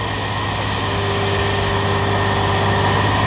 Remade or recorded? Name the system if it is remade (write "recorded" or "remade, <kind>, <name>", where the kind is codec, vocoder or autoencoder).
recorded